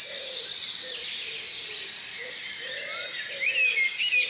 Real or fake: real